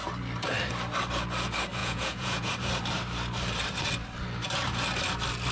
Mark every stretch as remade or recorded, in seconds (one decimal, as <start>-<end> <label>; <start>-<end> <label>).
0.0-1.8 recorded; 1.8-2.5 remade; 2.5-5.5 recorded